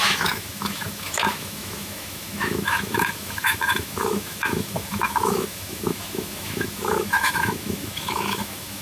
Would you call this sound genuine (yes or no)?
no